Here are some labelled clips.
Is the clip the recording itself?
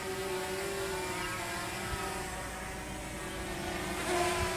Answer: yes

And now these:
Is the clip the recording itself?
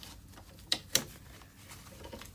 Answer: yes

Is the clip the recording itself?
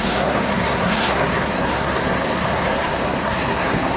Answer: no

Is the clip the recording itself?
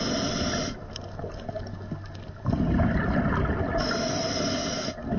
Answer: yes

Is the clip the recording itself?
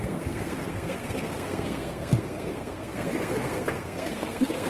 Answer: no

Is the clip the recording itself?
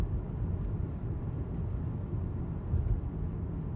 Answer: yes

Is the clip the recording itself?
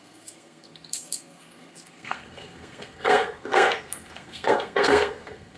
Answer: no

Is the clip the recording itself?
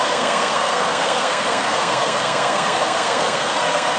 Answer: no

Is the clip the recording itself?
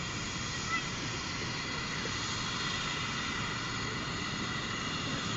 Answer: yes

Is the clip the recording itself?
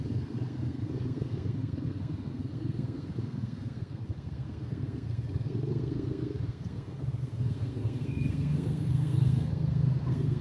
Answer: no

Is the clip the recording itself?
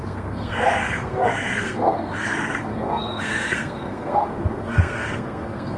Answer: no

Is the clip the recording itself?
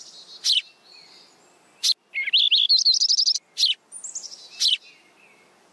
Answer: yes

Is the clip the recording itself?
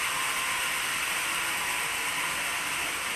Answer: yes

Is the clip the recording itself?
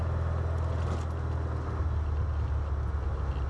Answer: yes